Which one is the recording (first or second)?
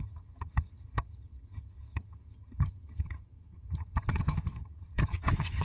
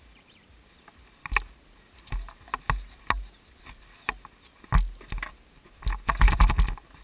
second